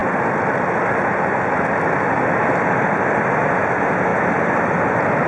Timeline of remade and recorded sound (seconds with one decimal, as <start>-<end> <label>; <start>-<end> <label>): 0.0-5.3 recorded